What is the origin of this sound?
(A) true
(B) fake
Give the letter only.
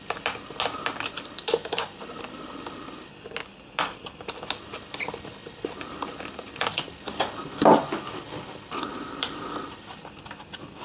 A